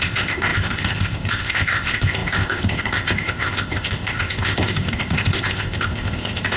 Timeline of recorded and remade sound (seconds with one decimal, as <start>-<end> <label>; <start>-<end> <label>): 0.0-6.6 remade